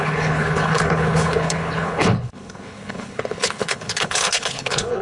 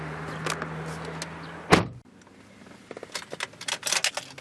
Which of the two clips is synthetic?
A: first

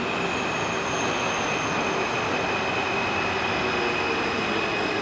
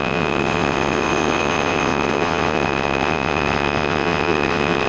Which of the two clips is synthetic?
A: second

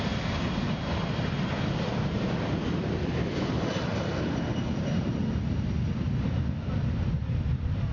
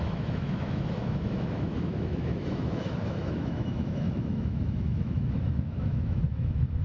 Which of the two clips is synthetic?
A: second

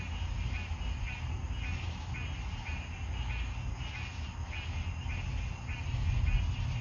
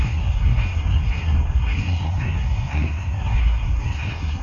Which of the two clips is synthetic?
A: second